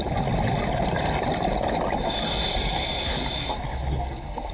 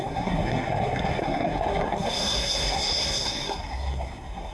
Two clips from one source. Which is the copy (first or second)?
second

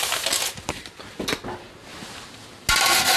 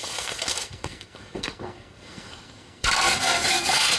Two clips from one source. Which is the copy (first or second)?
second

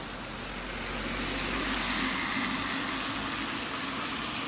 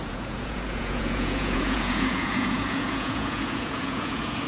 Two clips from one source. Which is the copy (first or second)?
second